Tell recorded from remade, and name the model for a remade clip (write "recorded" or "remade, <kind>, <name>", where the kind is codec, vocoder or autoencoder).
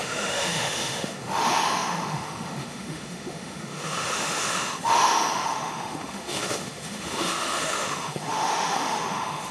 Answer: remade, autoencoder, DAC-VAE